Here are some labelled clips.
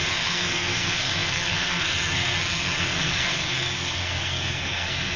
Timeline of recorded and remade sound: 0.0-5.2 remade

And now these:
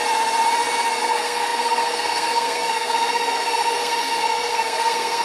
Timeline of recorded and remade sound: 0.0-1.0 recorded; 1.0-5.2 remade

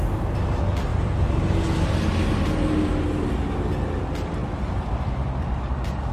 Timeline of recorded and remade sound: 0.0-6.1 recorded

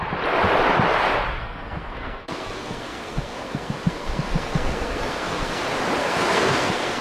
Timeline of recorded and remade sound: 0.0-1.4 recorded; 1.4-5.6 remade; 5.6-6.0 recorded; 6.0-7.0 remade

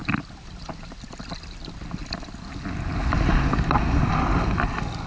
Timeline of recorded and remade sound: 0.0-5.1 recorded

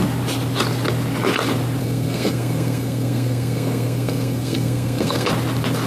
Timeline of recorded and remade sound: 0.0-1.8 recorded; 1.8-5.3 remade; 5.3-5.9 recorded